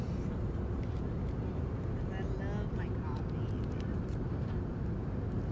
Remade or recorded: recorded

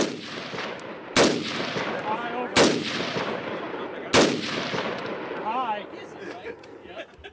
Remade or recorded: recorded